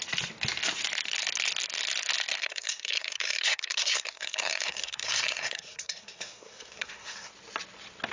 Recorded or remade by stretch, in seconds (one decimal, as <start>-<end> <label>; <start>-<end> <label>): 0.0-2.4 recorded; 2.4-7.3 remade; 7.3-8.1 recorded